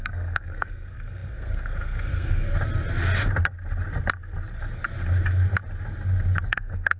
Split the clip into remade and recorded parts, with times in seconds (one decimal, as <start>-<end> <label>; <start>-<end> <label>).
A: 0.0-2.5 remade; 2.5-6.5 recorded; 6.5-7.0 remade